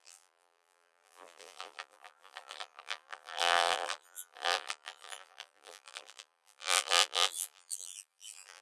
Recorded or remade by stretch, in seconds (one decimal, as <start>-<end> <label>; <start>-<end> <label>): 0.0-8.6 remade